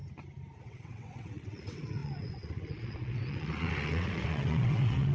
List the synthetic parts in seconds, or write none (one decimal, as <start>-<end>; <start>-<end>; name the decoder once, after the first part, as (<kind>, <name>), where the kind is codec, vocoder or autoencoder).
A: 0.6-5.1 (vocoder, WaveNeXt)